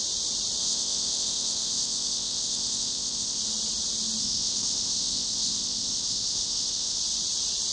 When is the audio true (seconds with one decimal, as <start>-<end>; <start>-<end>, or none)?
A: 0.0-0.6; 3.4-4.2; 7.0-7.7